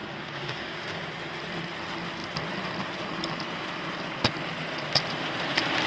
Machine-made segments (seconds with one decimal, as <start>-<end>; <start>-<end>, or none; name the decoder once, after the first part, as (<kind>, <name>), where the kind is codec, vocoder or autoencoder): 0.0-1.1 (codec, DAC)